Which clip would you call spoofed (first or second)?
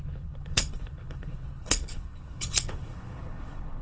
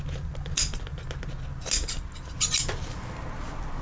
first